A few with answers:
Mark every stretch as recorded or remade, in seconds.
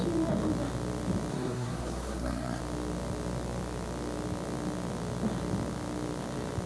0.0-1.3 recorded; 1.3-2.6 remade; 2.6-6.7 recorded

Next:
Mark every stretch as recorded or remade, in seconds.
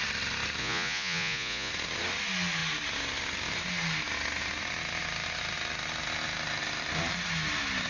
0.0-0.6 recorded; 0.6-1.7 remade; 1.7-7.9 recorded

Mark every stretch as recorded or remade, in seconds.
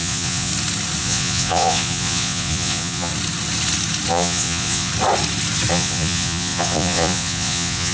0.0-0.5 remade; 0.5-1.0 recorded; 1.0-3.1 remade; 3.1-4.1 recorded; 4.1-4.9 remade; 4.9-5.7 recorded; 5.7-7.9 remade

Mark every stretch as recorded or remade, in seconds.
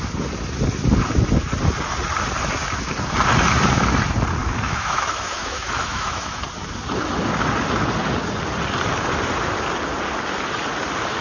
0.0-4.4 recorded; 4.4-6.4 remade; 6.4-11.2 recorded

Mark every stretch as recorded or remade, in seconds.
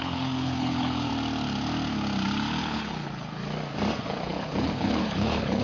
0.0-1.1 remade; 1.1-2.6 recorded; 2.6-3.4 remade; 3.4-4.0 recorded; 4.0-5.6 remade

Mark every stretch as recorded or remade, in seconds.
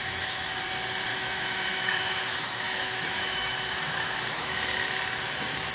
0.0-0.5 remade; 0.5-1.1 recorded; 1.1-4.5 remade; 4.5-5.7 recorded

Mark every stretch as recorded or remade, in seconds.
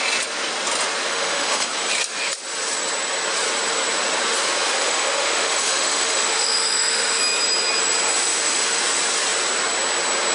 0.0-1.1 recorded; 1.1-1.7 remade; 1.7-4.8 recorded; 4.8-7.2 remade; 7.2-8.2 recorded; 8.2-8.8 remade; 8.8-10.3 recorded